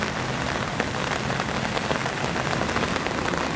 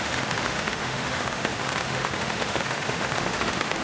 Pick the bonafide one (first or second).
first